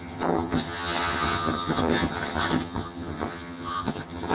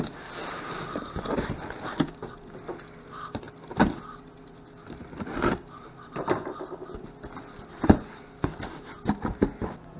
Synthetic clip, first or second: first